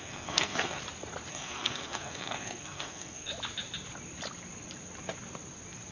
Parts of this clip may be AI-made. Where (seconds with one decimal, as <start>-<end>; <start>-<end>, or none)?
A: 0.0-0.8; 1.3-3.3